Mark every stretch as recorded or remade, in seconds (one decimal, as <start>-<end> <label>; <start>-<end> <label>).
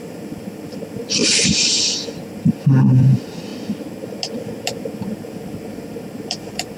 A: 0.0-1.2 remade; 1.2-2.2 recorded; 2.2-3.5 remade; 3.5-4.8 recorded; 4.8-6.8 remade